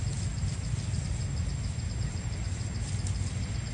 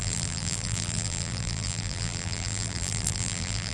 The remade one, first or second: second